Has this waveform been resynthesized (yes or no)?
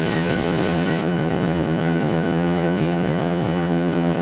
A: yes